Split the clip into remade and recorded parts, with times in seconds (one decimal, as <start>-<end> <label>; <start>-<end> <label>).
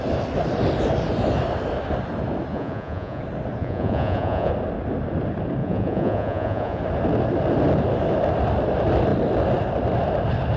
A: 0.0-2.5 recorded; 2.5-3.2 remade; 3.2-3.6 recorded; 3.6-4.5 remade; 4.5-5.6 recorded; 5.6-6.8 remade; 6.8-10.6 recorded